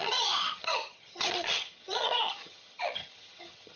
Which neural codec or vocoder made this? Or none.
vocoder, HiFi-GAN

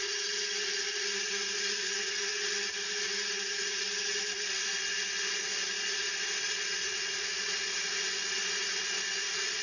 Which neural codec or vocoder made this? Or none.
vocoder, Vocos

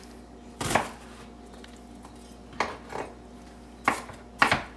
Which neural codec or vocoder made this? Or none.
none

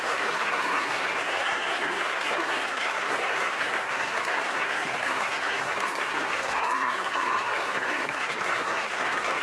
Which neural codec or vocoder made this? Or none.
codec, SNAC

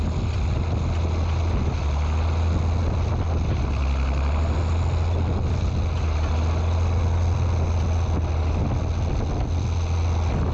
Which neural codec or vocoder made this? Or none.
none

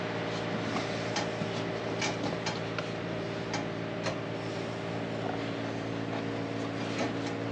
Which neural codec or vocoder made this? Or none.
none